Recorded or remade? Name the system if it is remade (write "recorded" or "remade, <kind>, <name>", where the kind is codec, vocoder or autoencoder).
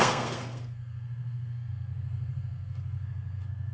remade, codec, SNAC